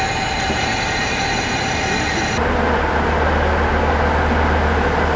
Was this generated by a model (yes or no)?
no